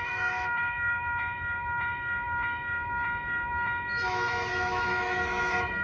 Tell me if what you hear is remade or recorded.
remade